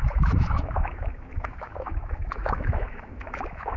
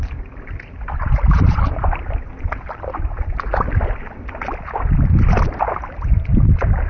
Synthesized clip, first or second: first